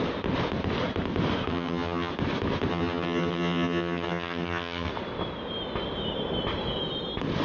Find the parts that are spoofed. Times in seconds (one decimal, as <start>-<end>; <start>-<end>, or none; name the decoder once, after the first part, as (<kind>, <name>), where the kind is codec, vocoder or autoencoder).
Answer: 1.5-2.1 (vocoder, HiFi-GAN); 2.7-4.9